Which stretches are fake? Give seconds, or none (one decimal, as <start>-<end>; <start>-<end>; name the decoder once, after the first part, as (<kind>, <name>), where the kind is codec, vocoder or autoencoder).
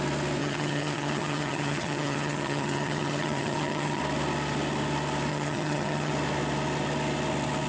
0.4-4.0 (vocoder, HiFi-GAN); 5.3-6.1